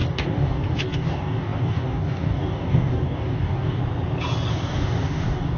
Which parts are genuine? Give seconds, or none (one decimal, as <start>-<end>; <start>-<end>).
3.8-4.5

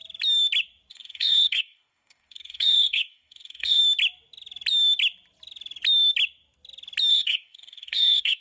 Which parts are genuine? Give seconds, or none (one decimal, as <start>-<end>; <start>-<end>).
0.0-0.9; 3.8-7.1

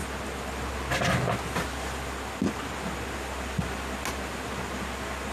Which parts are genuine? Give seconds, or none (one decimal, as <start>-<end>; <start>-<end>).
0.0-5.3

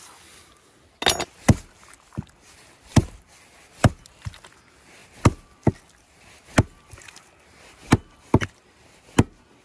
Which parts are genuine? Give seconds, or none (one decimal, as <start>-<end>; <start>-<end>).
0.0-9.6

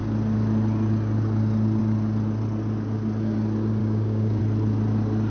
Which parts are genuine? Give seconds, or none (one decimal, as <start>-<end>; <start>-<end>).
0.0-3.8; 4.4-5.3

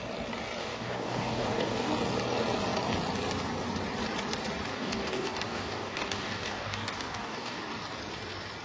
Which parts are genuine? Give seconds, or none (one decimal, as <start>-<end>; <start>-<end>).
0.0-0.6; 1.9-4.7; 7.6-8.6

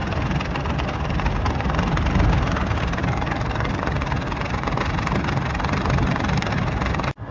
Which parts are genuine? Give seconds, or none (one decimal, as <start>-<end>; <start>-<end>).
0.0-3.0; 3.8-7.3

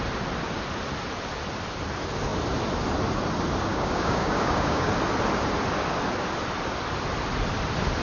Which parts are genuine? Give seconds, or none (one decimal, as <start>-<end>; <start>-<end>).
0.0-3.7; 4.9-8.0